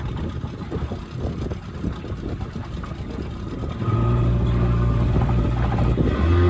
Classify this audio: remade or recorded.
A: recorded